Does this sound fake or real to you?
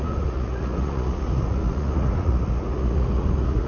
fake